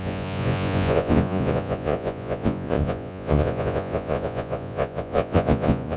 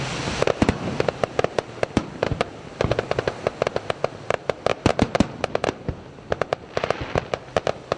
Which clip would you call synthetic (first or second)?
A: first